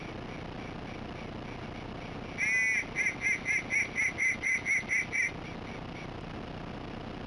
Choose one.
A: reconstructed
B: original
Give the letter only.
B